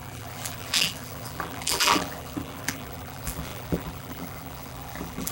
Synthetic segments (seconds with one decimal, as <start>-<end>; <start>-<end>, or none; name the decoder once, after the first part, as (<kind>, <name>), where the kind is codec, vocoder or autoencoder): 0.0-5.3 (vocoder, BigVGAN v2)